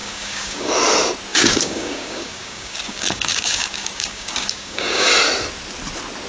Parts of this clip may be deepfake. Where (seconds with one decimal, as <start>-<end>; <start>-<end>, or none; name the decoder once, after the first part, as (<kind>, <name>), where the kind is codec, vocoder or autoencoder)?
0.0-0.7 (codec, DAC); 1.3-5.1